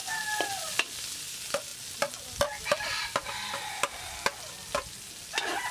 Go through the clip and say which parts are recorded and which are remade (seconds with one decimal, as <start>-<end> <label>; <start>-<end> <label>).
0.0-5.7 recorded